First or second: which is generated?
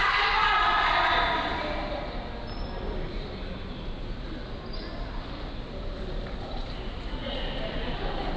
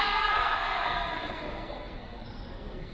second